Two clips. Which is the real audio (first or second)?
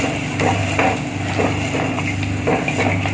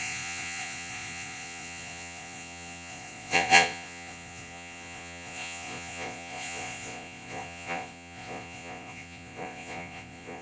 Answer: first